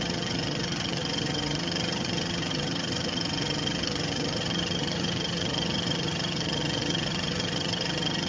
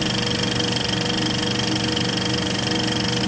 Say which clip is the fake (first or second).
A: first